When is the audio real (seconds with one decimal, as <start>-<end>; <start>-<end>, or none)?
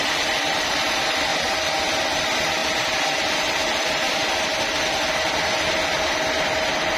0.0-7.0